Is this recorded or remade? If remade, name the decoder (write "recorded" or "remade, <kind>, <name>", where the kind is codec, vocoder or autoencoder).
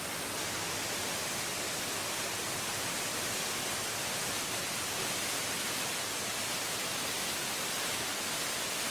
recorded